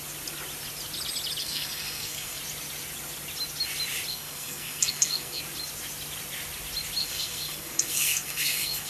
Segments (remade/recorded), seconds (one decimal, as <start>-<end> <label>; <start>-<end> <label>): 0.0-1.4 recorded; 1.4-2.4 remade; 2.4-4.1 recorded; 4.1-5.4 remade; 5.4-7.0 recorded; 7.0-8.9 remade